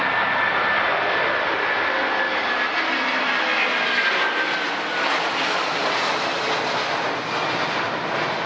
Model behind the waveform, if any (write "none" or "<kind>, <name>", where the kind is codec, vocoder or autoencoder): none